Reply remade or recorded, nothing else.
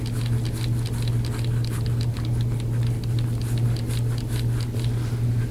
recorded